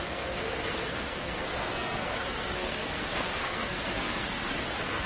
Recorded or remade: remade